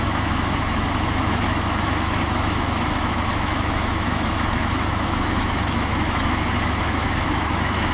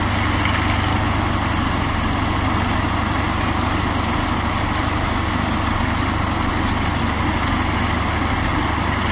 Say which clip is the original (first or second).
second